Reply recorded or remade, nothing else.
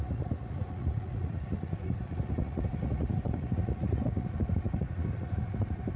remade